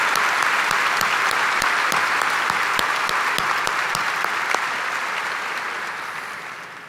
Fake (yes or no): yes